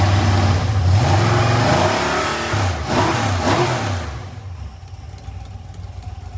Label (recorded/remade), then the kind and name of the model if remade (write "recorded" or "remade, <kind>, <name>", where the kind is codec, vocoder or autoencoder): recorded